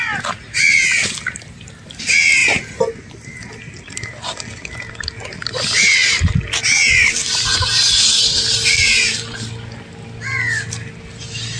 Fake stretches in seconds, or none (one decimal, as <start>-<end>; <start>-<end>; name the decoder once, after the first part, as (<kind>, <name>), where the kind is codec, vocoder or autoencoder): none